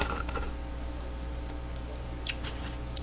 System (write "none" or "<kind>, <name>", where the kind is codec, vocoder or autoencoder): none